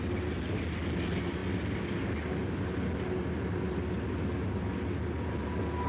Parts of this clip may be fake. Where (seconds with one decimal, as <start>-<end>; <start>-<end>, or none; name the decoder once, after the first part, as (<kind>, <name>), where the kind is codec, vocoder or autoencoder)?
none